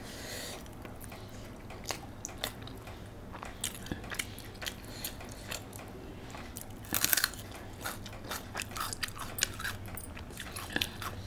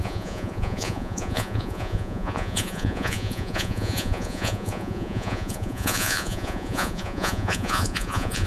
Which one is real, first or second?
first